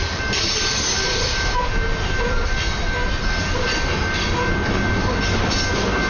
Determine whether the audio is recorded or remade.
recorded